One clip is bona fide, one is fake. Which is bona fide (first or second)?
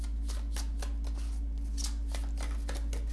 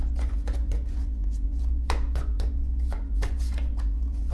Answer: first